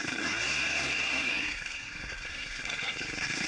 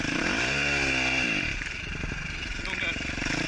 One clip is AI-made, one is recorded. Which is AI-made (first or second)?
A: first